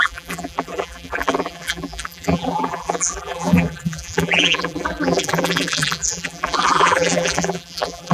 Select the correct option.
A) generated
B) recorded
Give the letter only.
A